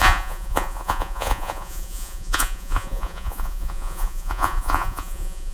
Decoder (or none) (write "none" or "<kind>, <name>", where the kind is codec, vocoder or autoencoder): vocoder, Vocos